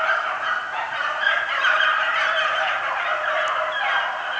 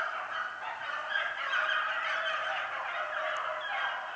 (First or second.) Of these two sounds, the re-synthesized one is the first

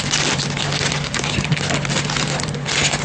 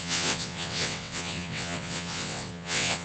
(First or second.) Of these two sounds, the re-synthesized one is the second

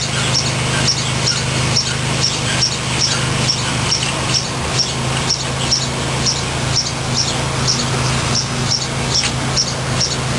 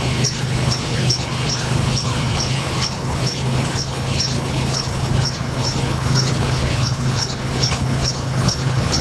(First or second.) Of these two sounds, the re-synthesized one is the second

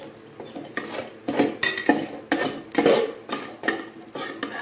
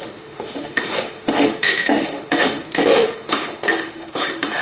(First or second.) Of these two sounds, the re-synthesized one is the second